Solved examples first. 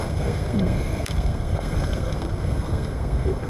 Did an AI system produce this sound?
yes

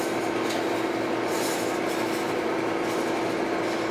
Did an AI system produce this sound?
no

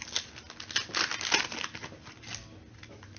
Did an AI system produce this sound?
no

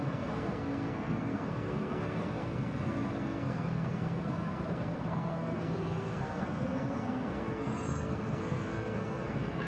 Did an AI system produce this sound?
yes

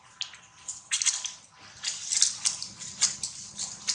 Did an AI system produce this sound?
no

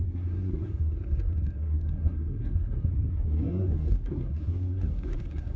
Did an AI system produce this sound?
yes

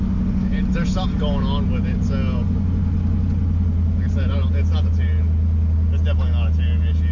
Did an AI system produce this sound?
no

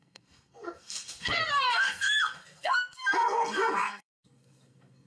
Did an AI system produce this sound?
yes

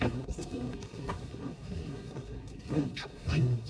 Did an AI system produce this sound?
yes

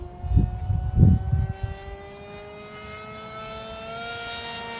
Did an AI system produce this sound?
no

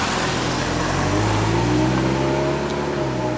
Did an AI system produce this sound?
no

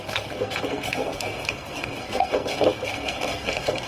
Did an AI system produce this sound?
yes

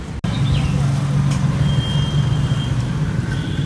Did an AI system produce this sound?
no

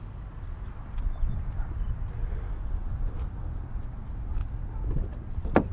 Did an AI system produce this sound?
no